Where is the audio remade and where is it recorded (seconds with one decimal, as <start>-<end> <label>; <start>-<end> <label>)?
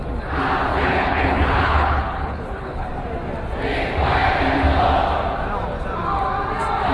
0.0-0.7 recorded; 0.7-2.9 remade; 2.9-6.9 recorded